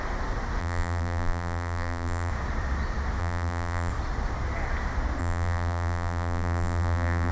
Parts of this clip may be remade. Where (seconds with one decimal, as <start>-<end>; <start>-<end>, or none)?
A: 0.6-2.3; 3.2-3.9; 5.2-7.3

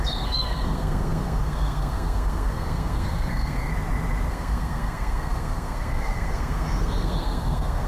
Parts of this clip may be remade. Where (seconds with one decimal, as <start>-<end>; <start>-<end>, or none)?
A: 0.0-3.7; 4.3-7.9